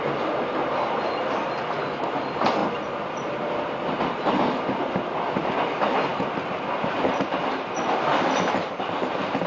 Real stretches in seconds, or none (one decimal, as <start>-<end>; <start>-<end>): 0.0-9.5